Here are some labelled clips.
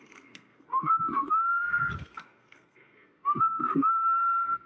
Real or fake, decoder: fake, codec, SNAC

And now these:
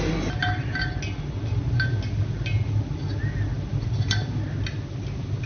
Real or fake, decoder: real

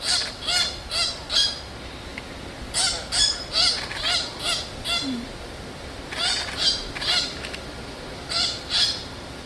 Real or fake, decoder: real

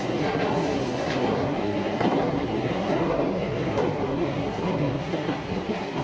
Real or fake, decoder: fake, codec, SNAC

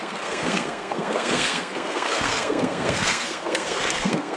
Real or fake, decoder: fake, codec, SNAC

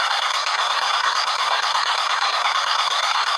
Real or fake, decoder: fake, codec, SNAC